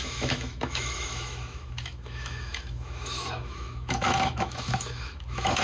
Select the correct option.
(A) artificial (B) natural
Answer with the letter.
A